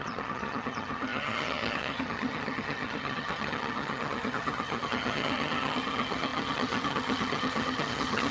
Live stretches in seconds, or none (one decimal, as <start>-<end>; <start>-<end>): none